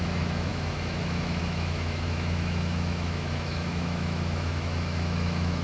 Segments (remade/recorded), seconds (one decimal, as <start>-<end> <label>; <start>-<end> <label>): 0.0-5.6 remade